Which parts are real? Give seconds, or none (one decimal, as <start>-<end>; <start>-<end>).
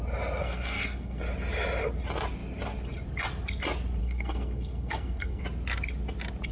0.0-0.4; 1.2-4.0; 5.4-6.5